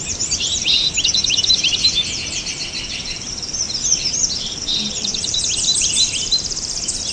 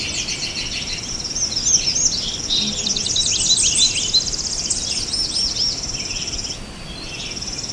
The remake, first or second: first